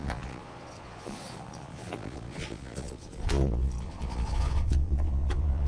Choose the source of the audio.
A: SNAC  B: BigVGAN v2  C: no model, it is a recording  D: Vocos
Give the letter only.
D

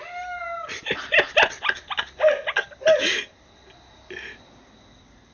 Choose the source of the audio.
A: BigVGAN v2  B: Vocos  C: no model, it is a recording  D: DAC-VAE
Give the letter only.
C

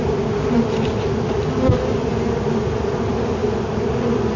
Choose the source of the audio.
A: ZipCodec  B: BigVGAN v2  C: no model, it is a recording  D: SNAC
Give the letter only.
C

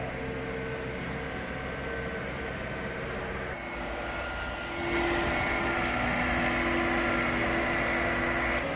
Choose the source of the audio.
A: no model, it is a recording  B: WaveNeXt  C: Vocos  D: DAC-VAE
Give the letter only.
A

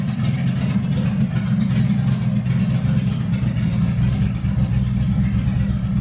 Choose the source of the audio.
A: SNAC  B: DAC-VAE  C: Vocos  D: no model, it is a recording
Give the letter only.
D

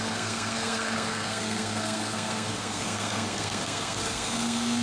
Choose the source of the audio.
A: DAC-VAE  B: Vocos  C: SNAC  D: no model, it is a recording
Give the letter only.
C